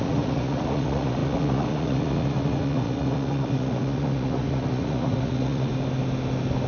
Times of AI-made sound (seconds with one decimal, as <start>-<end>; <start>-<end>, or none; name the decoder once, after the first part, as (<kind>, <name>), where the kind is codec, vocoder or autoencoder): 0.0-5.7 (vocoder, Vocos)